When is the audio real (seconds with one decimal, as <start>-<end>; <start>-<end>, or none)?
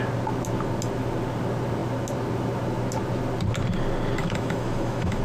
0.0-4.2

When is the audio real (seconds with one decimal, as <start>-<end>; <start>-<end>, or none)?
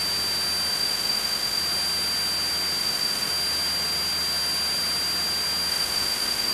0.0-0.7; 1.6-2.8; 3.3-5.7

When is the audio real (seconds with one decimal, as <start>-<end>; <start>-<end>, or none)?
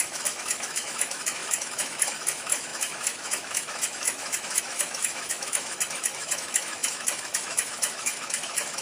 none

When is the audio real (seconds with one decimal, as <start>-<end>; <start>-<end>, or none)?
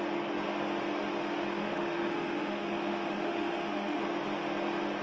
0.0-1.5; 4.0-5.0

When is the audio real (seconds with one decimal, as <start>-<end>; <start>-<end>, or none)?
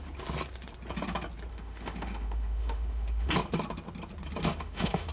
0.0-1.5; 3.3-4.5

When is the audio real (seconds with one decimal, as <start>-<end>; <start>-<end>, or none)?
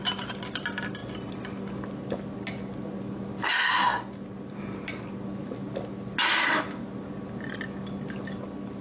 0.0-8.8